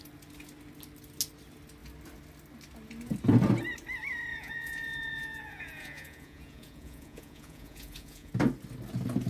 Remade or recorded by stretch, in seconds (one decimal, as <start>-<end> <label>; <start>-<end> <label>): 0.0-4.3 recorded; 4.3-8.3 remade; 8.3-9.3 recorded